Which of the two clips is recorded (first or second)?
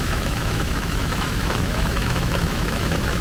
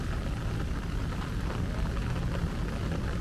second